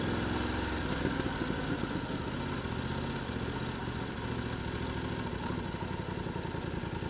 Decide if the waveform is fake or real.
real